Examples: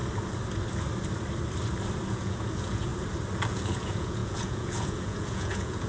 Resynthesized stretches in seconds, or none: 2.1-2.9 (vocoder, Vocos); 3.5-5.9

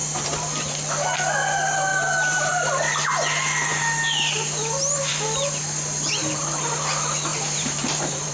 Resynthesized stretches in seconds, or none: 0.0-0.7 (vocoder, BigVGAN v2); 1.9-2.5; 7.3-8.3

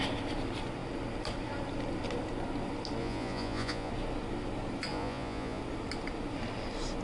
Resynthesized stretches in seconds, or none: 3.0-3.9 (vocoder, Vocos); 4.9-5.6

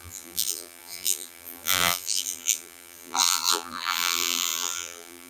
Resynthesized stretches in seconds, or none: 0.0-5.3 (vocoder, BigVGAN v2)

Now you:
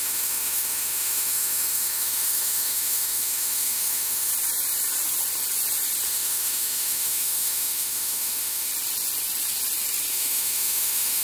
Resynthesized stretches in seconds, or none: 0.0-4.3 (autoencoder, DAC-VAE); 6.1-8.7; 10.1-11.2